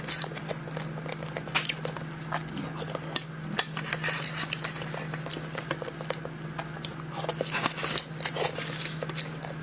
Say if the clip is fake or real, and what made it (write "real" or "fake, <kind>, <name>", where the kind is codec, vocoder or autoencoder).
real